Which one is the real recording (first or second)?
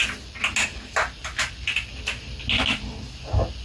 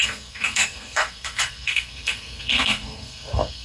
first